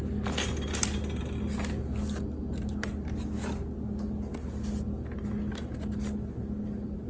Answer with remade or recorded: recorded